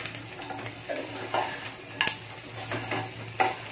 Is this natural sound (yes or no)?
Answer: yes